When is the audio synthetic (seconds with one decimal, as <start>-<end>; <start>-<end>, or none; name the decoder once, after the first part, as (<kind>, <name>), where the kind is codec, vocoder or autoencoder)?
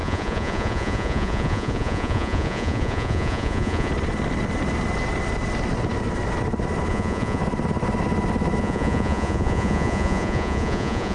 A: 0.0-3.9 (vocoder, Vocos); 6.9-7.4; 8.6-11.1